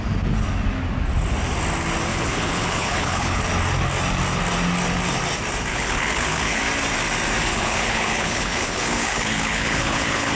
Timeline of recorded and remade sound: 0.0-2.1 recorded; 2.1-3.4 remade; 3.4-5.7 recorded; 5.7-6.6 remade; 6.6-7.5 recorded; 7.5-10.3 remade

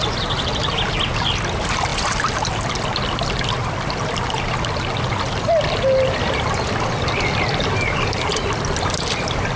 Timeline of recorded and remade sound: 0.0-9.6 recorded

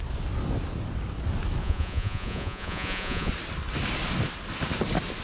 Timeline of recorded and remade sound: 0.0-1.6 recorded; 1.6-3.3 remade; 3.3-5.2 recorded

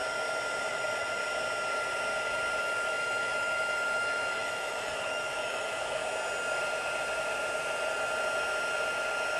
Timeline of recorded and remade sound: 0.0-0.7 recorded; 0.7-1.2 remade; 1.2-2.6 recorded; 2.6-6.0 remade; 6.0-9.4 recorded